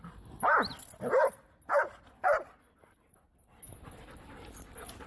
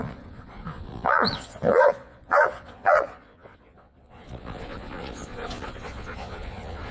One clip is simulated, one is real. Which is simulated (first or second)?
second